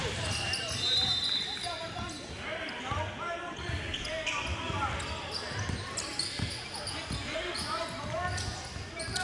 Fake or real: real